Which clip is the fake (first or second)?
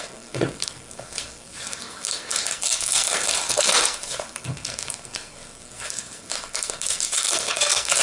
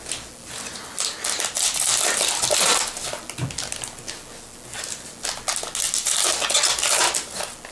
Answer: first